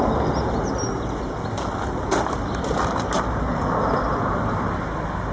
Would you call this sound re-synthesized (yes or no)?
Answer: no